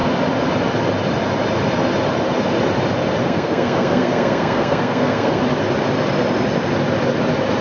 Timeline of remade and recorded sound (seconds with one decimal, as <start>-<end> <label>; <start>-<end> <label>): 0.0-3.2 recorded; 3.2-5.4 remade; 5.4-7.6 recorded